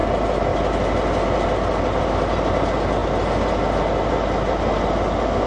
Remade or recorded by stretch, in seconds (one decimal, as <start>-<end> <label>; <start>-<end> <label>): 0.0-5.5 recorded